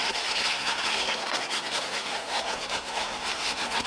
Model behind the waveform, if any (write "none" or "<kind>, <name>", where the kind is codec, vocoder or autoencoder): codec, SNAC